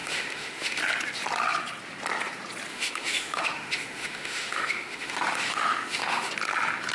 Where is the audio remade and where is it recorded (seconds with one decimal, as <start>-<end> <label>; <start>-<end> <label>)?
0.0-0.8 remade; 0.8-2.7 recorded; 2.7-6.3 remade; 6.3-6.9 recorded